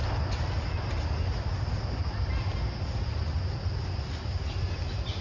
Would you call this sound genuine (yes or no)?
yes